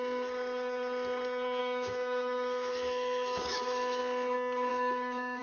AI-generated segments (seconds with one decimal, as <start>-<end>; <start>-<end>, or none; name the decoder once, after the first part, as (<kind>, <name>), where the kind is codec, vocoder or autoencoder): 1.6-4.0 (autoencoder, DAC-VAE); 4.7-5.4